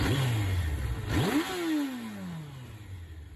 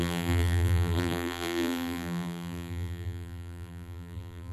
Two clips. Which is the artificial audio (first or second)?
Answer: second